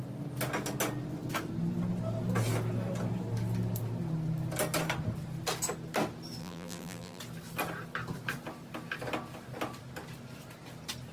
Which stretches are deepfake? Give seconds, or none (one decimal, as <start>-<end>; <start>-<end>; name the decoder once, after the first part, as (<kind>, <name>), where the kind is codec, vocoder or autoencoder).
6.4-7.2 (vocoder, BigVGAN v2)